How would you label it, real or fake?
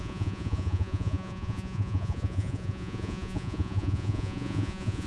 fake